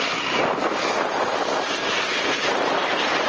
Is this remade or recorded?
recorded